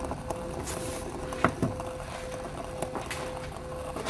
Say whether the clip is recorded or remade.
recorded